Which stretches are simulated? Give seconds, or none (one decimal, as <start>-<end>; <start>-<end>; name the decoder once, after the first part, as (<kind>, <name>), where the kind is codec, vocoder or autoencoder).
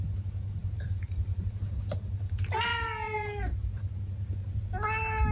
0.6-1.5 (vocoder, BigVGAN v2); 2.7-4.6